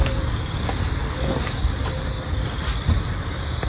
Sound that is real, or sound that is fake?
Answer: fake